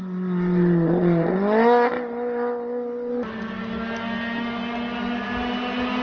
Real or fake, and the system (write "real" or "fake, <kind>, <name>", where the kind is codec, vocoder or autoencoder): real